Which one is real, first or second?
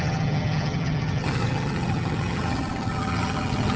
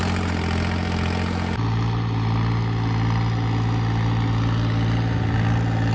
second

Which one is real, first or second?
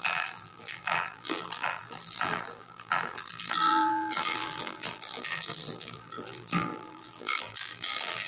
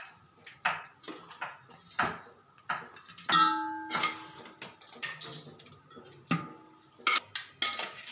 second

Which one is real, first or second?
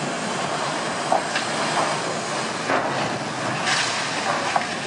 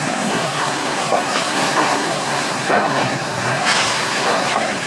first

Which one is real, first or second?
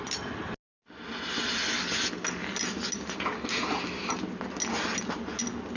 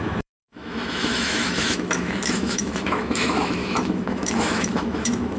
first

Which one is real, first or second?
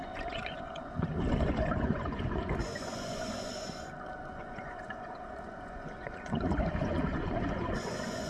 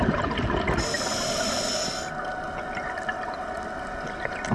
second